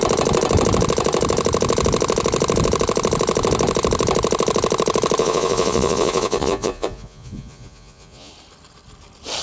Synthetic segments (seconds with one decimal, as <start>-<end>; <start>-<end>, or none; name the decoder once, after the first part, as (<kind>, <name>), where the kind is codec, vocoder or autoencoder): 5.2-8.3 (vocoder, Vocos)